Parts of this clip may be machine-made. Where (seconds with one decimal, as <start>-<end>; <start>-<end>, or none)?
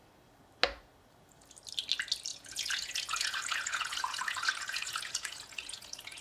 2.3-6.2